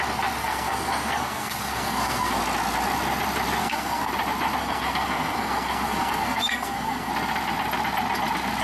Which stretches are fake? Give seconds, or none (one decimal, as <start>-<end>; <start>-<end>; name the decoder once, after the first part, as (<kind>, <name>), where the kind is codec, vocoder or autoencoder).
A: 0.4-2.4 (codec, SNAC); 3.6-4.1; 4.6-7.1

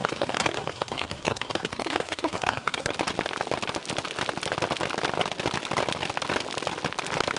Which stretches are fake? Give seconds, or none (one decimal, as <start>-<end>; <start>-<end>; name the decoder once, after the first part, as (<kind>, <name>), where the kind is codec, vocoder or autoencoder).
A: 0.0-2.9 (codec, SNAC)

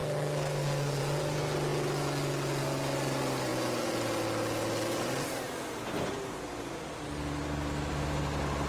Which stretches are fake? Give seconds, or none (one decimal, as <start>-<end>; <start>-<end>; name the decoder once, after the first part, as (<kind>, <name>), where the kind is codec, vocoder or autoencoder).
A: 0.0-1.0 (codec, SNAC)

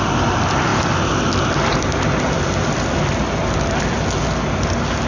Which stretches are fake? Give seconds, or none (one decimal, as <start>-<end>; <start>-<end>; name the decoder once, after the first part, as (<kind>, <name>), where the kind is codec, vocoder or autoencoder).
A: none

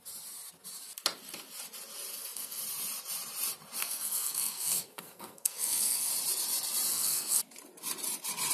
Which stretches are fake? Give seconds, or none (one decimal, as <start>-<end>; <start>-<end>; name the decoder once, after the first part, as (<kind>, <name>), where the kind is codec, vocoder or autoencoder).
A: 2.1-2.6 (codec, SNAC); 3.8-6.1; 6.9-7.4

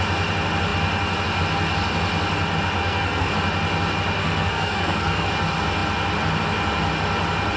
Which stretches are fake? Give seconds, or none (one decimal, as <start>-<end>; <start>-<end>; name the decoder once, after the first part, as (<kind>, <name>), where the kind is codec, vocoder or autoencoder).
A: 2.8-3.3 (codec, SNAC); 4.2-5.3

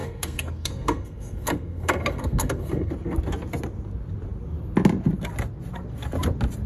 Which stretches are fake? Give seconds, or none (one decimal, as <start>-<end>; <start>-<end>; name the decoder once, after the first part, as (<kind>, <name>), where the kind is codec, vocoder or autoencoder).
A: 0.0-2.9 (codec, SNAC)